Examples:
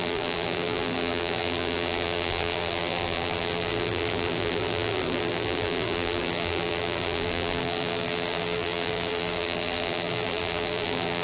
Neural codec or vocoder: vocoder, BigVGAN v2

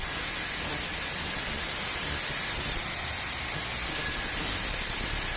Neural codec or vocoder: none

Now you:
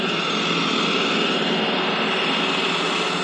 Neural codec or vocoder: none